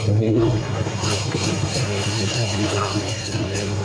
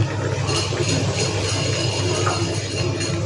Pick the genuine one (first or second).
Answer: second